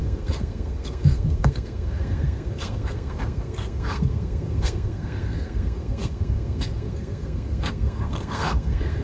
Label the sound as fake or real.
fake